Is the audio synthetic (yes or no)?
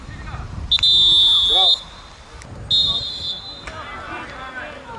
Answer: no